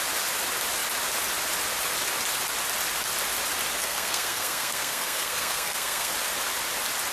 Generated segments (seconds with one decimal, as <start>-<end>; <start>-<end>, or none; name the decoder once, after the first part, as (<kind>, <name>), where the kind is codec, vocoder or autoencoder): 3.8-6.1 (codec, SNAC)